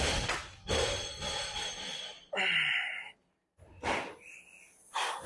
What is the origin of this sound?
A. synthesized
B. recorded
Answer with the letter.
B